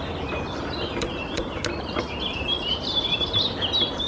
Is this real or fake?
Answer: real